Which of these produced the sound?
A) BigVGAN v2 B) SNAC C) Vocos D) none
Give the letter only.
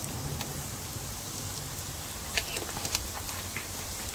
D